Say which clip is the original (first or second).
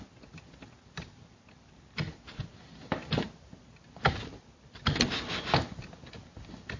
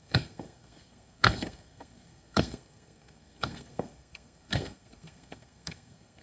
first